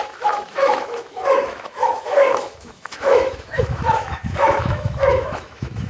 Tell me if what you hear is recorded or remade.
remade